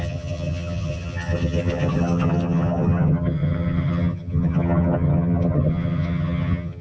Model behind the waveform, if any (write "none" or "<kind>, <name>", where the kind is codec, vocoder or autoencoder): vocoder, HiFi-GAN